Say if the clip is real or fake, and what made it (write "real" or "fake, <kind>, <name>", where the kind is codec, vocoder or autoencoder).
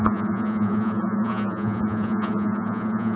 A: fake, vocoder, Vocos